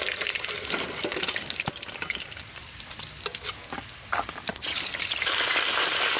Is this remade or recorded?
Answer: remade